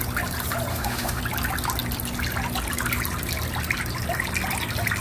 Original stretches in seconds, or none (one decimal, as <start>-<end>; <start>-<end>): 0.0-0.7; 1.2-5.0